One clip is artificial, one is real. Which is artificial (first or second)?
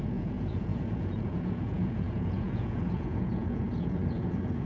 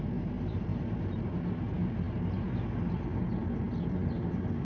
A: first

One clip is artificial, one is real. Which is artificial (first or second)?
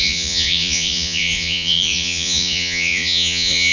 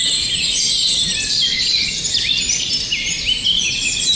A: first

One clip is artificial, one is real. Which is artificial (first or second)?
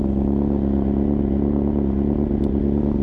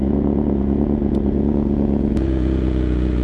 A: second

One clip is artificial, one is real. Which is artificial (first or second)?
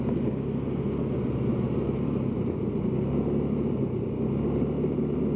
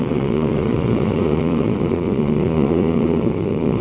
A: second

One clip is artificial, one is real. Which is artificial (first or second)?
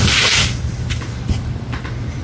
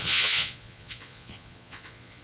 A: second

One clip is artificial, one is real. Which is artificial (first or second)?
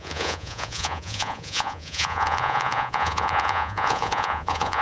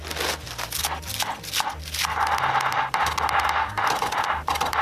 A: first